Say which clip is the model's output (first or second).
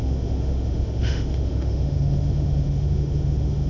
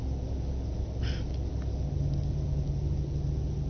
first